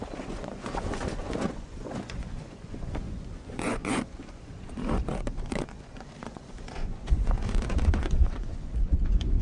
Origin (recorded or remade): remade